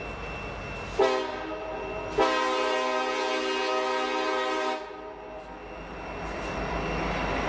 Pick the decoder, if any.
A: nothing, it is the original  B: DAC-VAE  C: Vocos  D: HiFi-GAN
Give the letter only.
A